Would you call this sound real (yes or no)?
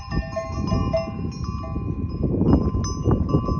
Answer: yes